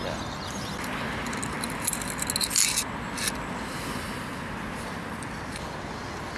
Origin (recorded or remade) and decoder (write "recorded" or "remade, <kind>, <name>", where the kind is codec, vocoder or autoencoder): recorded